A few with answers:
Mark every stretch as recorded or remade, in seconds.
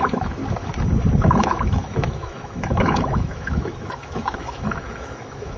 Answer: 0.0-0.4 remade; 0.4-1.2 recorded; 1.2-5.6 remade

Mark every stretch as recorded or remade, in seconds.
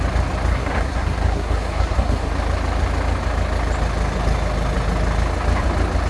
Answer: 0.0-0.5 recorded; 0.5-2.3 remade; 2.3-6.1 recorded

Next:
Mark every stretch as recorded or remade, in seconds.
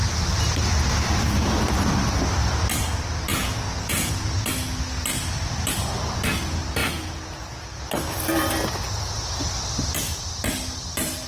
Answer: 0.0-3.3 recorded; 3.3-4.1 remade; 4.1-6.8 recorded; 6.8-7.8 remade; 7.8-11.3 recorded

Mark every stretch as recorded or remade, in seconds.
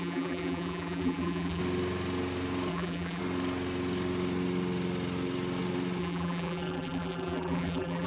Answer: 0.0-1.6 remade; 1.6-2.7 recorded; 2.7-3.2 remade; 3.2-6.0 recorded; 6.0-8.1 remade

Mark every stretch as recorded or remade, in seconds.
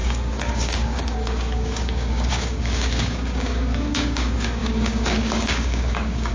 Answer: 0.0-6.3 remade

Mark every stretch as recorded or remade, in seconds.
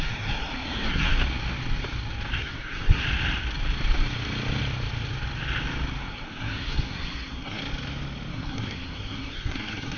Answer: 0.0-1.1 remade; 1.1-2.4 recorded; 2.4-3.0 remade; 3.0-6.0 recorded; 6.0-7.6 remade; 7.6-8.3 recorded; 8.3-10.0 remade